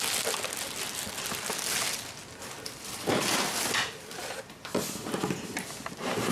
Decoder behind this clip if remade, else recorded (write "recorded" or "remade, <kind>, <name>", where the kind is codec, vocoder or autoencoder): recorded